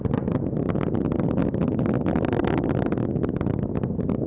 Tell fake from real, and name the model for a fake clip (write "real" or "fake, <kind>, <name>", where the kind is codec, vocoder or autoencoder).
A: real